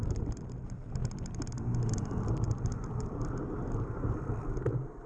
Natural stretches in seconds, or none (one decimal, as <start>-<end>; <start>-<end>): 1.0-4.1